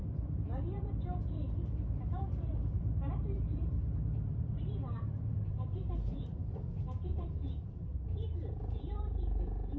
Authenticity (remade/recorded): remade